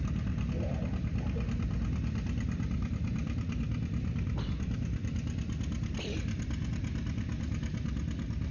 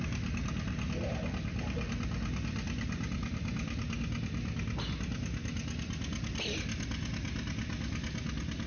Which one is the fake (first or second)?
first